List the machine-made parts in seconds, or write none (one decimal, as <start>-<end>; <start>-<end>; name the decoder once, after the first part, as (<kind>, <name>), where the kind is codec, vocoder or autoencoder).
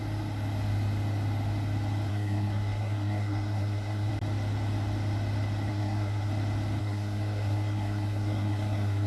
2.1-4.1 (codec, SNAC); 5.7-6.3; 6.8-9.1